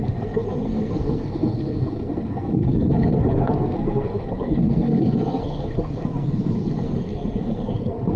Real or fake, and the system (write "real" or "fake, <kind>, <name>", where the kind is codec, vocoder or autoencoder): fake, codec, SNAC